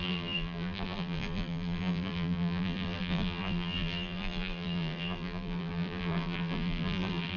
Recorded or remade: remade